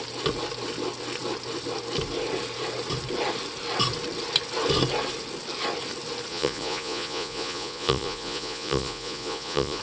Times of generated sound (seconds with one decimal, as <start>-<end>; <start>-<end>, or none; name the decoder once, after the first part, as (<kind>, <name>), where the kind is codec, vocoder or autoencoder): 6.3-9.8 (vocoder, Vocos)